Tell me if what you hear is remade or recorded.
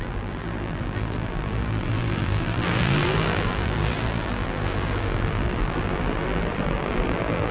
remade